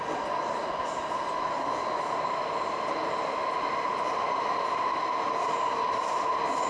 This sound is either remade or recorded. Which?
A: recorded